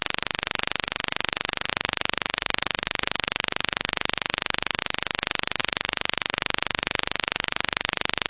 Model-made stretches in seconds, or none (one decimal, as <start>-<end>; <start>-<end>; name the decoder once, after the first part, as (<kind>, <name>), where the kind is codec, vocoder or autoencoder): 1.7-4.8 (codec, DAC); 5.6-8.3